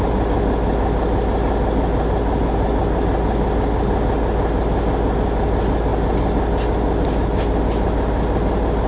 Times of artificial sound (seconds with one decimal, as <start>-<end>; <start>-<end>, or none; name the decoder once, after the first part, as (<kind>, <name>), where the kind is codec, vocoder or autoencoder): none